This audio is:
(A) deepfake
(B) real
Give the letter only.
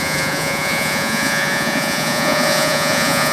A